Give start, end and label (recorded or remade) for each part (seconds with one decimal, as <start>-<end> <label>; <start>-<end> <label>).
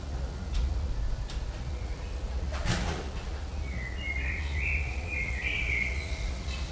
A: 0.0-0.9 remade; 0.9-1.6 recorded; 1.6-6.7 remade